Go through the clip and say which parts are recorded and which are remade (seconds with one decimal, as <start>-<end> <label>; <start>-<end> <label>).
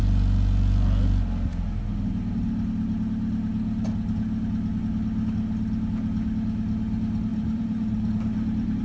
0.0-7.3 recorded; 7.3-8.8 remade